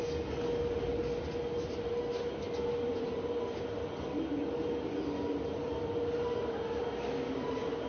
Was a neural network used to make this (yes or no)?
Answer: no